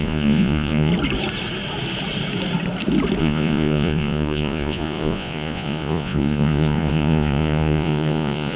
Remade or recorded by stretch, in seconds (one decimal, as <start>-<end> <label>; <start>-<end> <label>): 0.0-0.9 remade; 0.9-3.2 recorded; 3.2-8.6 remade